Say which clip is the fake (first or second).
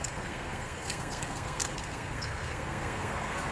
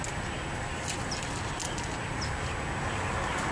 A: first